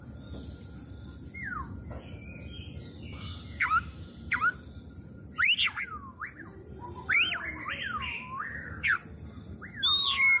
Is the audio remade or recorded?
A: recorded